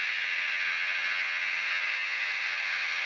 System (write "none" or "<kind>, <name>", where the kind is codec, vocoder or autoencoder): vocoder, HiFi-GAN